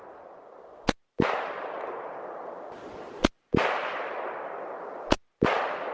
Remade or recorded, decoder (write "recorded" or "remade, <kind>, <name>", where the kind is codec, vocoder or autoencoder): recorded